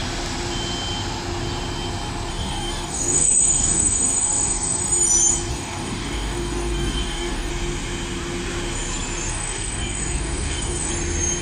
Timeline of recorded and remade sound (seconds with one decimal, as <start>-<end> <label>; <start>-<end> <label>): 0.0-2.3 recorded; 2.3-4.8 remade; 4.8-5.5 recorded; 5.5-7.5 remade; 7.5-9.3 recorded; 9.3-10.9 remade; 10.9-11.4 recorded